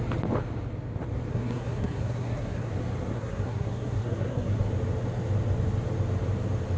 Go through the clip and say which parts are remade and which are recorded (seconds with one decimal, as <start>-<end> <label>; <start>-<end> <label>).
0.0-1.3 recorded; 1.3-2.7 remade; 2.7-3.1 recorded; 3.1-4.7 remade; 4.7-6.8 recorded